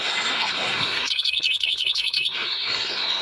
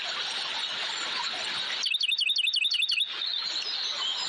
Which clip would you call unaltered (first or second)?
second